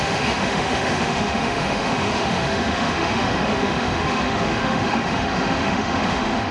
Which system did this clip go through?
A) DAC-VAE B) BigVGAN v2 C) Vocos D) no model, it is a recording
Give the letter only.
A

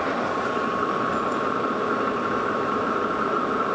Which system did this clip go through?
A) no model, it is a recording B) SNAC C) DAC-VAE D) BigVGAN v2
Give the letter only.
D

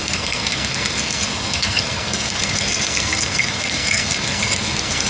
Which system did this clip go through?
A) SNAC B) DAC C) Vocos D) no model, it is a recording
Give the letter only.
A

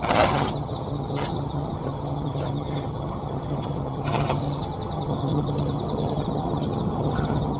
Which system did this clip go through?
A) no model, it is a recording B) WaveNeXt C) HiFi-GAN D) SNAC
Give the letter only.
C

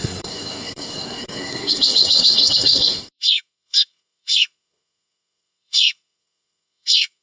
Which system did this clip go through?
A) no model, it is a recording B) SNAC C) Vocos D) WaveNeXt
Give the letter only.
B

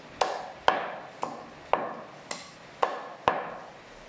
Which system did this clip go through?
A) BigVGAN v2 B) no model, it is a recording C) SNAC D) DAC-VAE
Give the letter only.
B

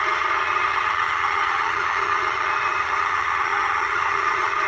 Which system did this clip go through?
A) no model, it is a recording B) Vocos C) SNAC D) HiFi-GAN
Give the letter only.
D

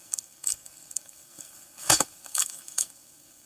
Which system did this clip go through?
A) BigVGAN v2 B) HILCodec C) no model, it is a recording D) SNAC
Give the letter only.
D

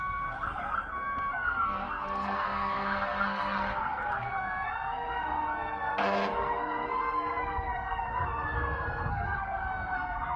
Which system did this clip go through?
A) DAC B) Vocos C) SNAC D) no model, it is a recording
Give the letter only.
C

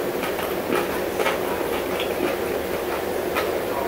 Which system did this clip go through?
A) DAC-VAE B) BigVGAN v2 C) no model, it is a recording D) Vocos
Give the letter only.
C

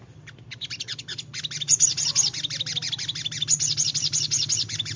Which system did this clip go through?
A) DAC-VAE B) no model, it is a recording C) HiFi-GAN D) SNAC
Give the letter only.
B